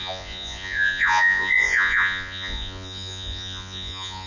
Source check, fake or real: fake